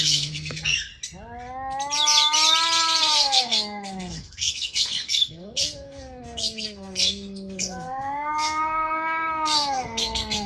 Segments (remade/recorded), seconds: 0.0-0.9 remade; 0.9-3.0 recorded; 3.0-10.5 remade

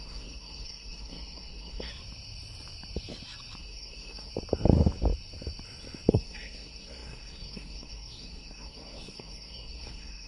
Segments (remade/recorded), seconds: 0.0-1.9 remade; 1.9-3.6 recorded; 3.6-4.3 remade; 4.3-6.1 recorded; 6.1-10.3 remade

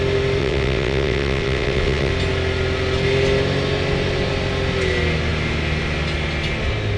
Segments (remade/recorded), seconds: 0.0-0.4 recorded; 0.4-2.1 remade; 2.1-7.0 recorded